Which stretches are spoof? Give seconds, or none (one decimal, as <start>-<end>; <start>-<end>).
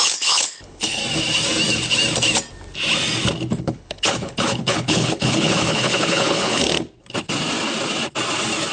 0.0-1.0; 3.6-6.6